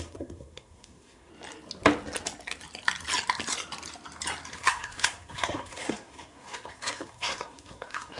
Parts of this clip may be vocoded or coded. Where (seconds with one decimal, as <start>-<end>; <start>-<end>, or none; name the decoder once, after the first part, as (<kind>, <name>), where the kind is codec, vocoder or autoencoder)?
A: 0.0-1.3 (codec, SNAC); 4.5-8.2